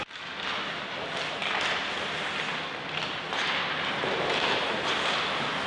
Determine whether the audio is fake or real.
real